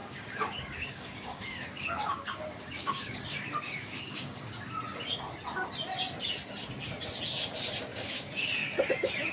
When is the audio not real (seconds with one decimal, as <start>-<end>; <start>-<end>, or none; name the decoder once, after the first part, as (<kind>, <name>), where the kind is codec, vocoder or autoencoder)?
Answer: 0.0-4.5 (codec, DAC); 7.9-8.5